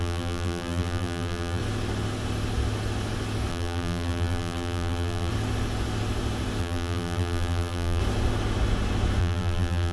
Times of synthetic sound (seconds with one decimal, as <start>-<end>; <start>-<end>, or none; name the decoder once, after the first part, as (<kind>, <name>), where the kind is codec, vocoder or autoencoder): 0.0-1.6 (vocoder, BigVGAN v2); 3.5-5.3; 6.6-8.0; 9.2-9.9